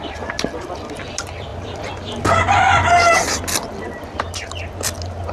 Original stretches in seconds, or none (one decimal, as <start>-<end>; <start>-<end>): 0.0-5.3